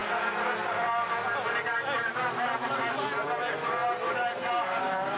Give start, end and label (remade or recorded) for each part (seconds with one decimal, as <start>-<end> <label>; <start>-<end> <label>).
0.0-5.2 recorded